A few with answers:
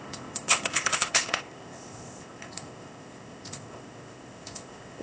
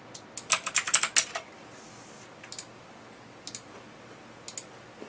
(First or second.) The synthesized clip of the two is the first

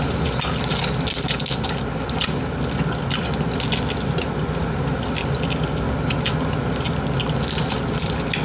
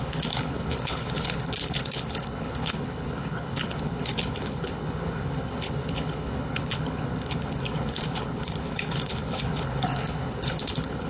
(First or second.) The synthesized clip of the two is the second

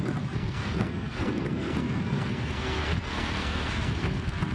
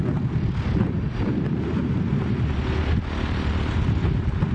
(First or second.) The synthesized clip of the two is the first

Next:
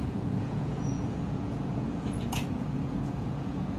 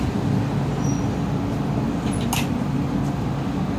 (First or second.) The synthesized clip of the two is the first